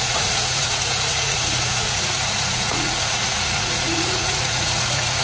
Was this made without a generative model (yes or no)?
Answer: no